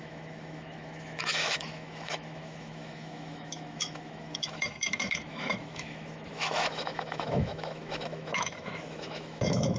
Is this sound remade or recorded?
remade